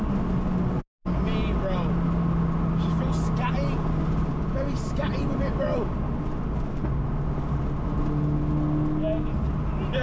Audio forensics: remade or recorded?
recorded